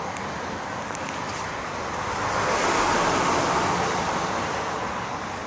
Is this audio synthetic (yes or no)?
no